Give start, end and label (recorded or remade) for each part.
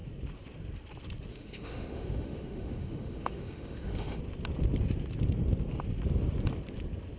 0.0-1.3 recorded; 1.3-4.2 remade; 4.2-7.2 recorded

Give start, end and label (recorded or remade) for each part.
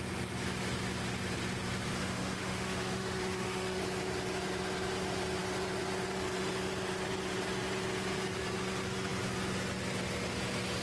0.0-2.0 recorded; 2.0-3.8 remade; 3.8-10.8 recorded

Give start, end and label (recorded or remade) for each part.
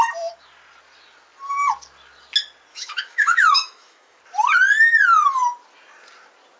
0.0-2.7 recorded; 2.7-4.2 remade; 4.2-6.6 recorded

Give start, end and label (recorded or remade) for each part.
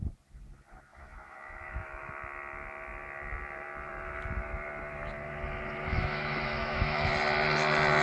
0.0-0.9 recorded; 0.9-2.1 remade; 2.1-5.9 recorded; 5.9-7.1 remade; 7.1-8.0 recorded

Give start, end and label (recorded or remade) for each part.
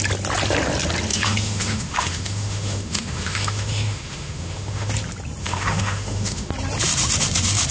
0.0-1.1 recorded; 1.1-4.9 remade; 4.9-5.4 recorded; 5.4-6.5 remade; 6.5-7.7 recorded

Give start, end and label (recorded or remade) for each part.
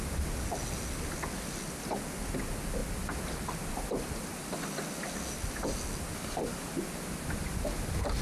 0.0-8.2 recorded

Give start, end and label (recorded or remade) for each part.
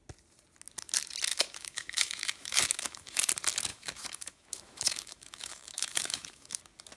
0.0-1.3 recorded; 1.3-3.3 remade; 3.3-3.7 recorded; 3.7-6.6 remade; 6.6-7.0 recorded